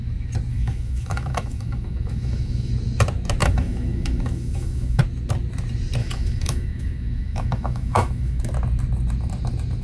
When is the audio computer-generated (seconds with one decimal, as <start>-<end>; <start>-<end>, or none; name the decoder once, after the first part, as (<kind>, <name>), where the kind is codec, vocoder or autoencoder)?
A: 0.5-2.7 (autoencoder, DAC-VAE); 3.4-5.0; 6.0-8.4